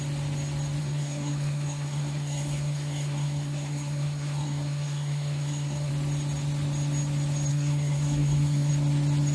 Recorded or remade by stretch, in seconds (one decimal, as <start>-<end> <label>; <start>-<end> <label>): 0.0-0.8 recorded; 0.8-5.9 remade; 5.9-7.5 recorded; 7.5-8.7 remade; 8.7-9.3 recorded